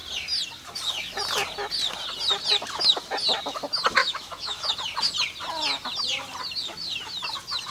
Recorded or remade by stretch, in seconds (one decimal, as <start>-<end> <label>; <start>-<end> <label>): 0.0-4.0 recorded; 4.0-4.7 remade; 4.7-7.7 recorded